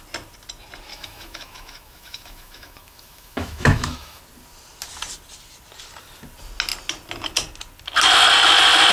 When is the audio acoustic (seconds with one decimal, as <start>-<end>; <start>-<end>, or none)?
0.0-0.9; 4.2-8.9